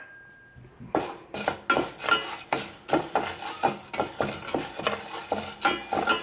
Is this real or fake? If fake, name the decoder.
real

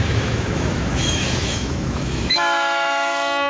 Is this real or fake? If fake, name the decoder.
fake, autoencoder, DAC-VAE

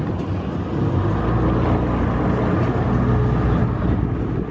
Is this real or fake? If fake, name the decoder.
real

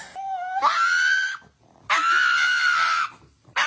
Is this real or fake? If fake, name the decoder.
real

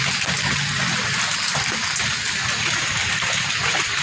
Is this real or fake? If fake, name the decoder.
real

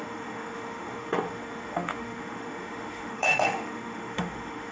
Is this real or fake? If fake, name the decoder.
fake, autoencoder, DAC-VAE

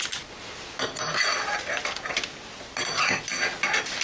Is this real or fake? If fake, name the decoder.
real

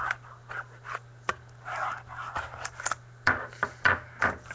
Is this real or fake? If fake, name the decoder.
real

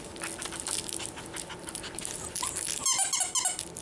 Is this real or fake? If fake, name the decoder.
real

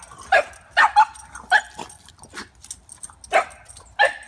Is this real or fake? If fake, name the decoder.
real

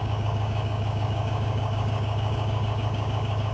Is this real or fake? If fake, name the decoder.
fake, codec, DAC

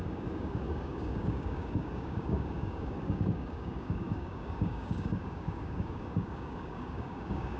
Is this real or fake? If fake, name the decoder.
fake, codec, DAC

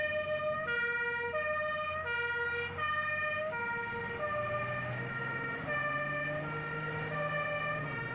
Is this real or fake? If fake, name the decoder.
real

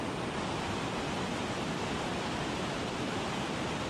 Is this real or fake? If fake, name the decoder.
real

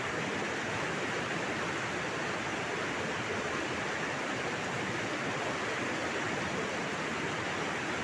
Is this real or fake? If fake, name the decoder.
real